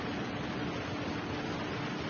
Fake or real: real